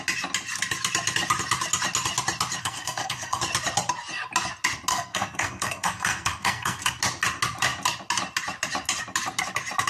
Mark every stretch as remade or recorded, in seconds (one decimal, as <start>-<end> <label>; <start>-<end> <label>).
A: 0.0-2.6 recorded; 2.6-3.4 remade; 3.4-4.9 recorded; 4.9-7.0 remade; 7.0-9.9 recorded